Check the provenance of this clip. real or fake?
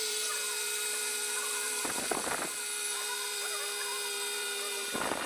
fake